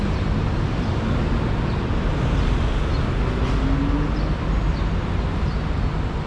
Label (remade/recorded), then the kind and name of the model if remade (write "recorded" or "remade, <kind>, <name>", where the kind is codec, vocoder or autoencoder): recorded